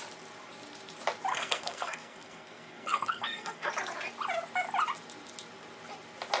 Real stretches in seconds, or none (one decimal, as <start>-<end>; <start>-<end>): 0.0-1.3; 3.7-6.4